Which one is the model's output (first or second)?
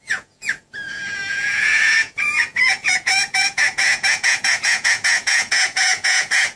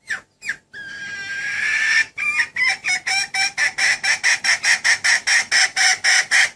first